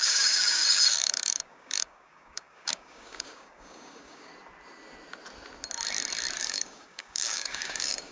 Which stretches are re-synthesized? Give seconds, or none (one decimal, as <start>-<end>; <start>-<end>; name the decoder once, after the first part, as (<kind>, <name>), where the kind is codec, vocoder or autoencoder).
0.0-4.3 (codec, DAC); 6.4-8.1